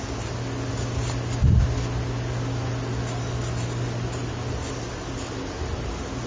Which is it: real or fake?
real